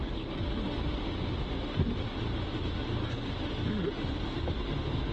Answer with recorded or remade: recorded